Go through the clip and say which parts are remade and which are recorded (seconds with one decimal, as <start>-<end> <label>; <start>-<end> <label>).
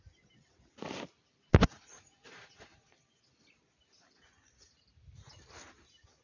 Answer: 0.0-1.6 recorded; 1.6-2.9 remade; 2.9-6.2 recorded